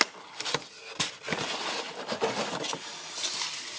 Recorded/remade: recorded